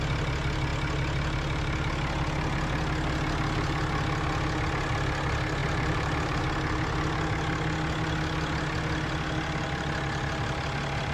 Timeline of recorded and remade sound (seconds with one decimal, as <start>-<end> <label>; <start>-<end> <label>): 0.0-5.6 recorded; 5.6-6.4 remade; 6.4-11.1 recorded